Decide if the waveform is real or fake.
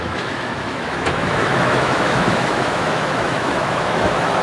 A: fake